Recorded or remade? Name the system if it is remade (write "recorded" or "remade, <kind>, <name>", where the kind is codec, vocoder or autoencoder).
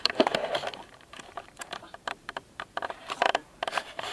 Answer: remade, vocoder, BigVGAN v2